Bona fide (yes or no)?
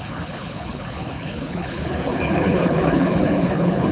no